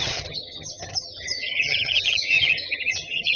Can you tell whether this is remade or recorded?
remade